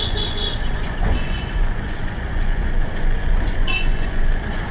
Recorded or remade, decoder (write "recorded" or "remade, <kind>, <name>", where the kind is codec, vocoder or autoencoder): remade, vocoder, Vocos